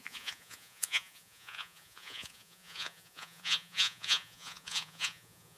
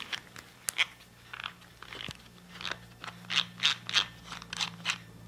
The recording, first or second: second